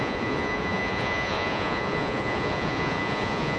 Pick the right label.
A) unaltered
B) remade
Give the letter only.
B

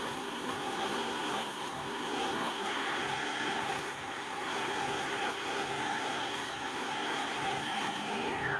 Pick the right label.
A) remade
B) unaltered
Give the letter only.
A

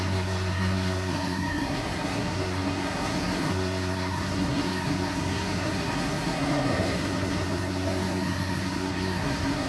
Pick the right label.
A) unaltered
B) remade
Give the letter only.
B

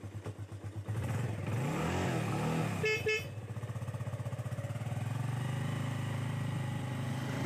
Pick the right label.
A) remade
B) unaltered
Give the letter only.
B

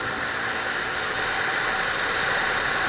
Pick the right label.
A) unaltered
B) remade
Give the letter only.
A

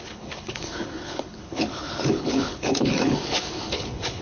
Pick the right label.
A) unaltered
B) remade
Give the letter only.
B